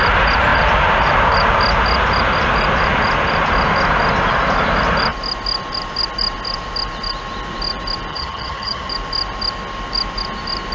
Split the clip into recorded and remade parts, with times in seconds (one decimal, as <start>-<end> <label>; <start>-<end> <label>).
0.0-8.1 recorded; 8.1-8.9 remade; 8.9-10.7 recorded

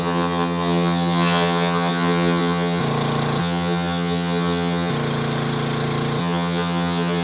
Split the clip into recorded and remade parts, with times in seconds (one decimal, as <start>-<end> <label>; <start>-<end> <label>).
0.0-2.8 remade; 2.8-3.4 recorded; 3.4-4.9 remade; 4.9-6.2 recorded; 6.2-7.2 remade

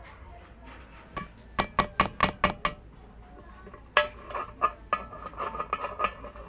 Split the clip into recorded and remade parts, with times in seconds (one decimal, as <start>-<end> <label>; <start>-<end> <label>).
0.0-6.5 recorded

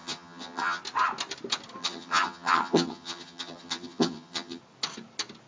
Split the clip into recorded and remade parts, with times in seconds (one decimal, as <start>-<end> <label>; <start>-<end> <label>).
0.0-0.8 remade; 0.8-1.8 recorded; 1.8-4.6 remade; 4.6-5.5 recorded

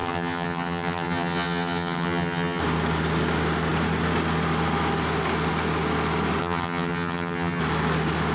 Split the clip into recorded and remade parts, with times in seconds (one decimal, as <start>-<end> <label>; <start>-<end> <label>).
0.0-2.6 remade; 2.6-6.4 recorded; 6.4-7.6 remade; 7.6-8.3 recorded

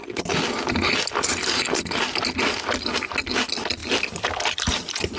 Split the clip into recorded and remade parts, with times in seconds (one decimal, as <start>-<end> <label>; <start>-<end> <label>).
0.0-5.2 recorded

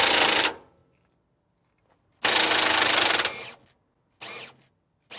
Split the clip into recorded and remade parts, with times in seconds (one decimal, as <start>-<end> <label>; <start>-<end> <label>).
0.0-5.2 recorded